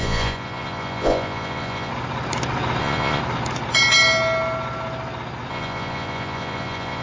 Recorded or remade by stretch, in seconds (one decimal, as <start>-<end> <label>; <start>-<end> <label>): 0.0-1.9 remade; 1.9-2.8 recorded; 2.8-3.2 remade; 3.2-5.5 recorded; 5.5-7.0 remade